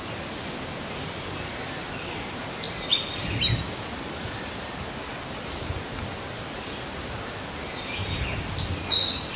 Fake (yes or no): no